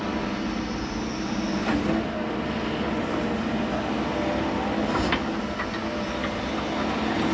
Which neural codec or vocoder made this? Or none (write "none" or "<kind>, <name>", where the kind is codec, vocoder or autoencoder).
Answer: none